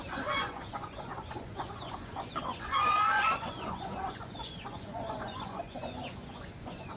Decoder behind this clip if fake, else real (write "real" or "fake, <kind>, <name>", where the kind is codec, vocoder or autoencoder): fake, vocoder, Vocos